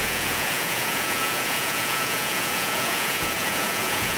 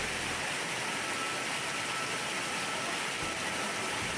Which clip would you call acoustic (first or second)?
second